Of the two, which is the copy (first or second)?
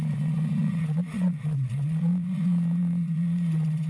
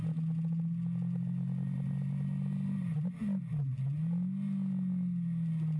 first